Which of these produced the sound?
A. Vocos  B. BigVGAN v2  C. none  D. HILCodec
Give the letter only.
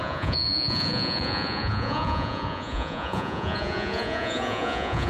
A